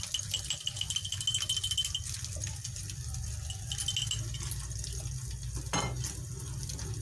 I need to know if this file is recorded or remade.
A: recorded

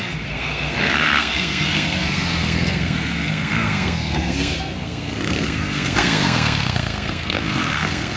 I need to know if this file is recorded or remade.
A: remade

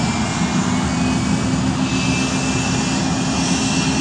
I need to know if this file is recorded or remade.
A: recorded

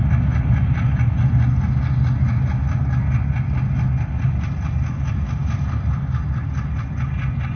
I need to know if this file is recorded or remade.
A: recorded